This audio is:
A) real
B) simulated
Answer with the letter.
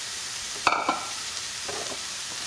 B